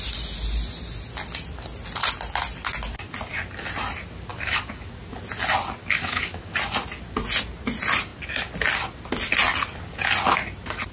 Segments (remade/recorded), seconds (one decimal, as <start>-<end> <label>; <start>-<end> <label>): 0.0-4.3 recorded; 4.3-4.9 remade; 4.9-5.8 recorded; 5.8-6.5 remade; 6.5-10.9 recorded